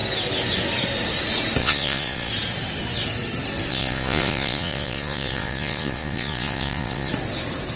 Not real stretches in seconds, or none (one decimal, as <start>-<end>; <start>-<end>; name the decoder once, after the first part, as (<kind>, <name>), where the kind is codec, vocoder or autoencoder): 1.6-2.3 (vocoder, Vocos); 3.7-7.1